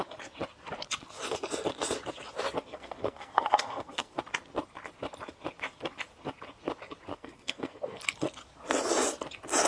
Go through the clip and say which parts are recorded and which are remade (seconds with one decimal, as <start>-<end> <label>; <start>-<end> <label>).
0.0-2.7 recorded; 2.7-4.2 remade; 4.2-7.1 recorded; 7.1-8.0 remade; 8.0-9.7 recorded